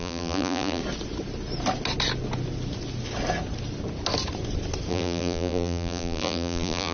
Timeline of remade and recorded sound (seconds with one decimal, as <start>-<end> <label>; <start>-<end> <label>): 0.0-0.8 remade; 0.8-4.9 recorded; 4.9-6.9 remade